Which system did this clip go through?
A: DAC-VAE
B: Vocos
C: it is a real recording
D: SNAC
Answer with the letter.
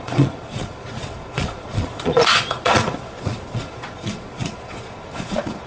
B